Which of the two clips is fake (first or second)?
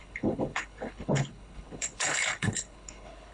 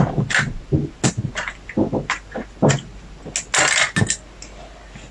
first